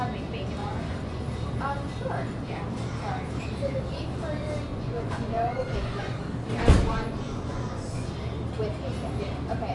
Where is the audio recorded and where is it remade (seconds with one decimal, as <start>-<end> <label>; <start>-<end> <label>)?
0.0-0.6 recorded; 0.6-1.2 remade; 1.2-4.7 recorded; 4.7-6.2 remade; 6.2-6.9 recorded; 6.9-8.1 remade; 8.1-9.7 recorded